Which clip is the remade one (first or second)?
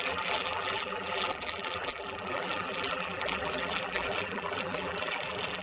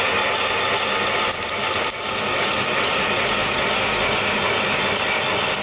first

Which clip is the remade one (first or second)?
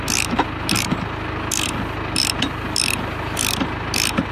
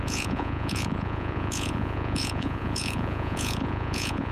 second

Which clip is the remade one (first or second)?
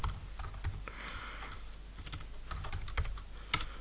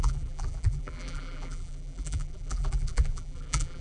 second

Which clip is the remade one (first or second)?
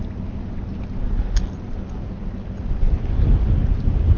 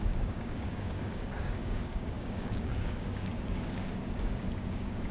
second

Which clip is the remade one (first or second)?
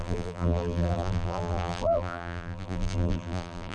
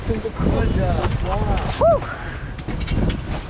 first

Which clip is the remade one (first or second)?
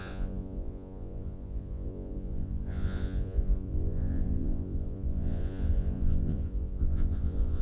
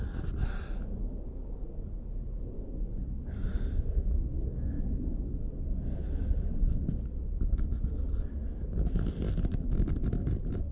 first